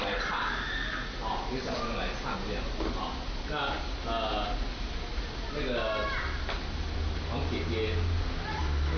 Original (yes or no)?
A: yes